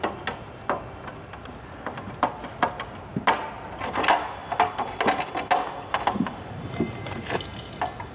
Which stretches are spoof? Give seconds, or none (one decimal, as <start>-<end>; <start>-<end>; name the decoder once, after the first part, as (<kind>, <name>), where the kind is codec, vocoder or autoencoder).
3.1-3.8 (vocoder, BigVGAN v2)